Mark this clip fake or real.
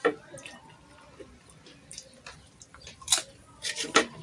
real